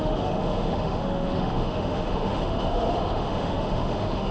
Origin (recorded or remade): remade